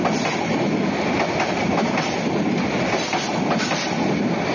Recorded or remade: recorded